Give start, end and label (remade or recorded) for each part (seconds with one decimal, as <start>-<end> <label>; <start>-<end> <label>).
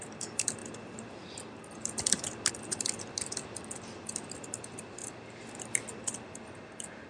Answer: 0.0-7.1 recorded